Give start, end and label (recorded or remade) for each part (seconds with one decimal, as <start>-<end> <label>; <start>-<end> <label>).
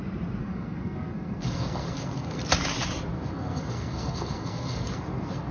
0.0-0.4 recorded; 0.4-2.4 remade; 2.4-3.1 recorded; 3.1-5.5 remade